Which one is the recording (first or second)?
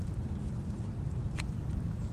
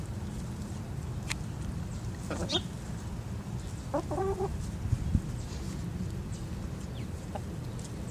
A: second